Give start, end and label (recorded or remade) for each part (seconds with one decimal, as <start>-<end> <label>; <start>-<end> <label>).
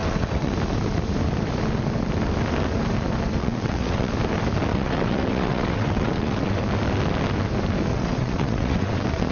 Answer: 0.0-0.5 remade; 0.5-3.4 recorded; 3.4-4.1 remade; 4.1-4.7 recorded; 4.7-6.6 remade; 6.6-7.9 recorded; 7.9-9.3 remade